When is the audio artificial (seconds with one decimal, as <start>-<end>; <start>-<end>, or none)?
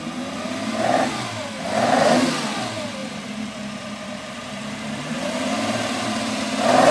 3.0-6.4